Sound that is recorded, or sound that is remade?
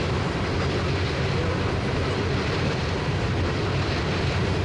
recorded